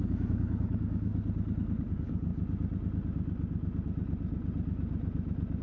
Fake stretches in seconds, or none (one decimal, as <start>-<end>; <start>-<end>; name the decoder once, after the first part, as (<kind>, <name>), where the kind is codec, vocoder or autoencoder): 0.0-1.1 (codec, DAC); 1.9-2.3